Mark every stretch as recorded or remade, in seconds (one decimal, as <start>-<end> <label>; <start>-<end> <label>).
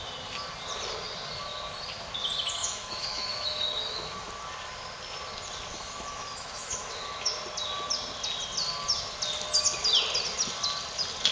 0.0-2.6 recorded; 2.6-4.3 remade; 4.3-5.7 recorded; 5.7-7.4 remade; 7.4-11.3 recorded